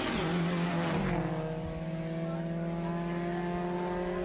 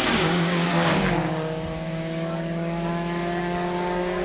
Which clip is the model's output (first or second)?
second